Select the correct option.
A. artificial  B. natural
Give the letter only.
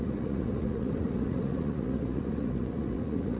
A